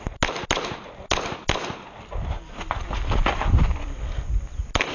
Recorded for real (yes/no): yes